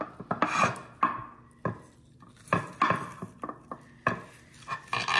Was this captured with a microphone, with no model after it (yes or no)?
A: yes